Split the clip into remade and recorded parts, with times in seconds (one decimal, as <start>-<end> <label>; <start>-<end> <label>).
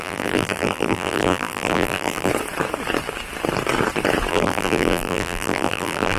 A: 0.0-2.3 remade; 2.3-4.3 recorded; 4.3-6.2 remade